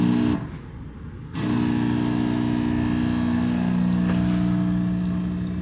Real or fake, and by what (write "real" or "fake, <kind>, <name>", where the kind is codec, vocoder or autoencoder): real